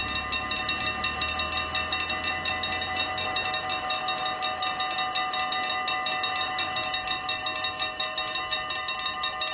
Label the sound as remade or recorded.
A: recorded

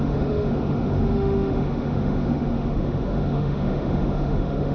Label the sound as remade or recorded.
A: remade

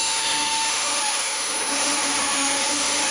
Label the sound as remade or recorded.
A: remade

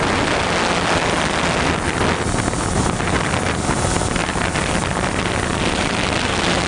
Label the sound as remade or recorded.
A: recorded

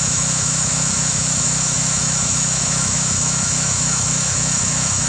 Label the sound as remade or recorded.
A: remade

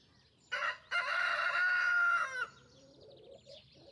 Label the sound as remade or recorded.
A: recorded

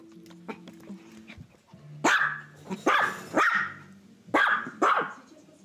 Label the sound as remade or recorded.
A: recorded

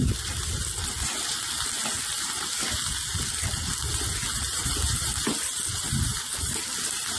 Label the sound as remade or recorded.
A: recorded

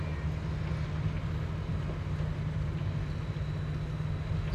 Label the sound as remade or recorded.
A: recorded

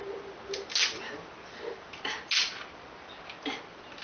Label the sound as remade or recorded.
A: recorded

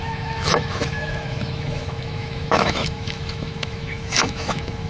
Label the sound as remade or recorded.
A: remade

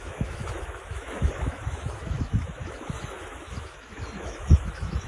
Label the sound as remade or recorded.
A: remade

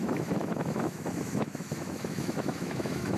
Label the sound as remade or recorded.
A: remade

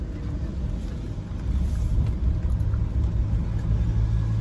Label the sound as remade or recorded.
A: recorded